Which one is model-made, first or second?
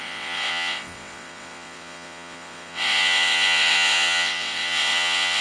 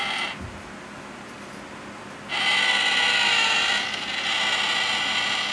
first